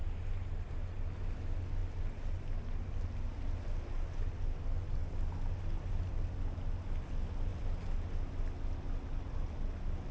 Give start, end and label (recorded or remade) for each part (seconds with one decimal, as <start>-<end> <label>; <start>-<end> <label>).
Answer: 0.0-10.1 recorded